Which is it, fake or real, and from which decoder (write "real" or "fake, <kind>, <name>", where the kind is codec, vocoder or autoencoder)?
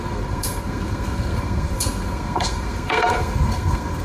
fake, codec, SNAC